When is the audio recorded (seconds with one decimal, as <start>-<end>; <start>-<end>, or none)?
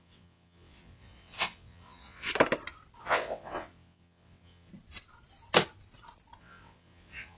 2.3-3.0; 4.7-6.4